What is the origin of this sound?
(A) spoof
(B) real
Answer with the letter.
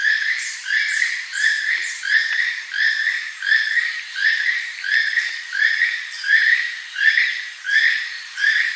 A